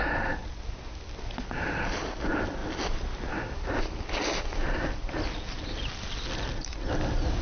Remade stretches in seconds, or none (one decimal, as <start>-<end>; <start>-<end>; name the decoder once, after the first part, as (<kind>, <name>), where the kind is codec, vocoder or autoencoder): none